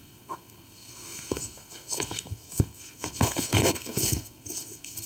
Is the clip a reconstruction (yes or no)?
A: yes